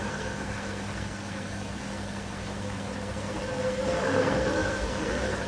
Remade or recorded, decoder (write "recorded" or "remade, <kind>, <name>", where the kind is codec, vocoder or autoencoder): remade, codec, SNAC